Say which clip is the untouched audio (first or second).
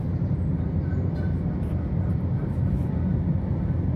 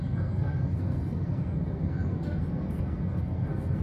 first